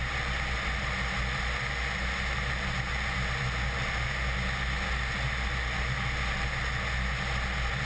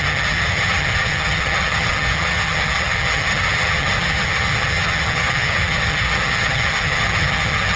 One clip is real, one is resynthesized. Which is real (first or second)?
first